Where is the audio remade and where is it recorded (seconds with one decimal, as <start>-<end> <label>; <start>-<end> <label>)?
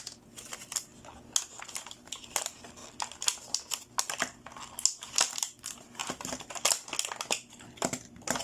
0.0-8.4 recorded